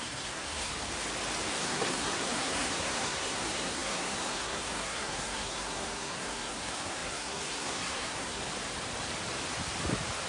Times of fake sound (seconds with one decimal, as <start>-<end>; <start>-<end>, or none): 0.0-0.7; 1.6-8.4